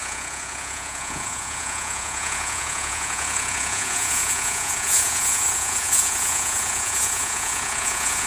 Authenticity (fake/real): fake